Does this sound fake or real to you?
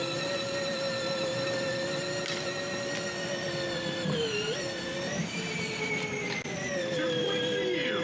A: real